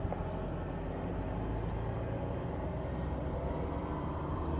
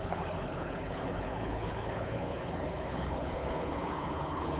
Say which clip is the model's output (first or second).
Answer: second